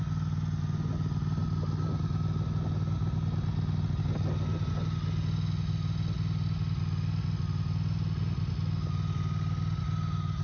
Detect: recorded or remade recorded